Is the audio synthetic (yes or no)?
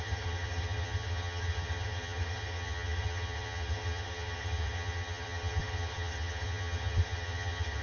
yes